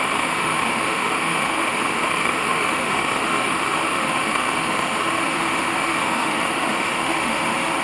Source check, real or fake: fake